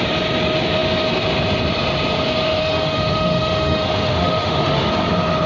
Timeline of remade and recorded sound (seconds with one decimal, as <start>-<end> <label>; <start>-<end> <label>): 0.0-2.6 recorded; 2.6-4.9 remade; 4.9-5.5 recorded